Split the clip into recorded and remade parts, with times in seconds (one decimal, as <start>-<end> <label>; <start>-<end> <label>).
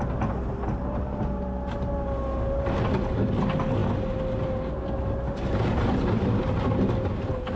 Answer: 0.0-7.6 recorded